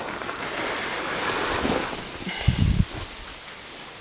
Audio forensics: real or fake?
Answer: real